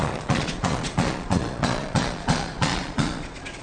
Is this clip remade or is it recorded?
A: remade